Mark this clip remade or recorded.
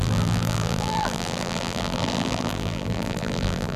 remade